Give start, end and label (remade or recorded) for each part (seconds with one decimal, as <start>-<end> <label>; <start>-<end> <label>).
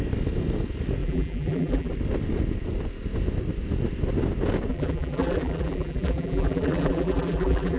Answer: 0.0-1.0 recorded; 1.0-1.9 remade; 1.9-4.7 recorded; 4.7-7.8 remade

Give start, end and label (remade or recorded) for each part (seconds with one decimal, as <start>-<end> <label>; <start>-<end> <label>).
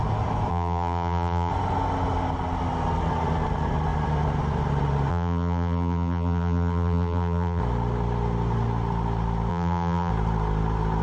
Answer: 0.0-0.5 recorded; 0.5-1.5 remade; 1.5-5.1 recorded; 5.1-7.6 remade; 7.6-9.5 recorded; 9.5-10.1 remade; 10.1-11.0 recorded